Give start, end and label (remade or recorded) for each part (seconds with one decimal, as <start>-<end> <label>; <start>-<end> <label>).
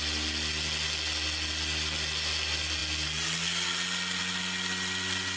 0.0-5.4 recorded